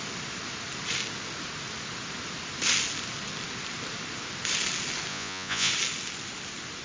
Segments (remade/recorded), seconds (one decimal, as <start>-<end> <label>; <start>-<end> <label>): 0.0-5.1 recorded; 5.1-5.7 remade; 5.7-6.8 recorded